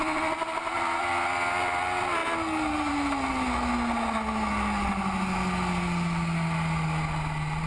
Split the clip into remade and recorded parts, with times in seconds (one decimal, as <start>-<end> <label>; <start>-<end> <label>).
0.0-7.7 recorded